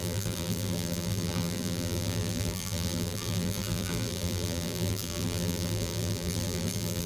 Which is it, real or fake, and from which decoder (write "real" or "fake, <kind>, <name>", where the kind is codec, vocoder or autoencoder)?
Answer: fake, vocoder, BigVGAN v2